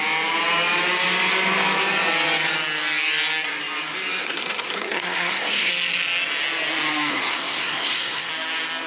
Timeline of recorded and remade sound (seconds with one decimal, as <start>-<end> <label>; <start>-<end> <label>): 0.0-4.2 recorded; 4.2-5.7 remade; 5.7-7.1 recorded; 7.1-8.3 remade; 8.3-8.9 recorded